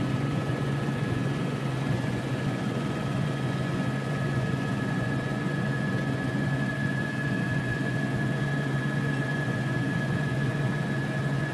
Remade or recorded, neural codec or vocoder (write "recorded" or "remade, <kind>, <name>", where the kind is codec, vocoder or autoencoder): remade, vocoder, Vocos